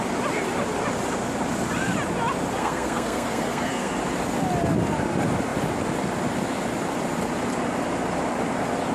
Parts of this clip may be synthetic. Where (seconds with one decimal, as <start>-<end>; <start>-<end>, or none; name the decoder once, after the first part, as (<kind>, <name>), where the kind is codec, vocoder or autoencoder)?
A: 2.6-3.9 (codec, SNAC)